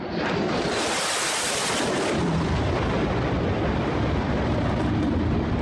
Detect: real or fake real